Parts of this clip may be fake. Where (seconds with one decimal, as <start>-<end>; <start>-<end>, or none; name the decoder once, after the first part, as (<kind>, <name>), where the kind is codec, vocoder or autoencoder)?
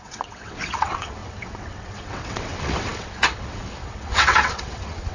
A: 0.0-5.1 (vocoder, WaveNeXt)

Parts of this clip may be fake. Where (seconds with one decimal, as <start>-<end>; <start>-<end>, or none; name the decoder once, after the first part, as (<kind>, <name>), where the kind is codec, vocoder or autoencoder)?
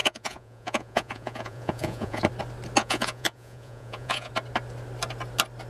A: 0.0-2.2 (vocoder, Vocos); 2.8-4.3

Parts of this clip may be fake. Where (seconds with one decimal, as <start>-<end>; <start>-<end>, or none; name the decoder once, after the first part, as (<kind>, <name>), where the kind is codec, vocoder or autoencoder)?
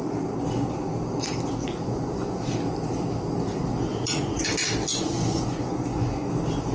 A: 1.6-2.4 (vocoder, Vocos); 3.9-4.4; 4.9-6.3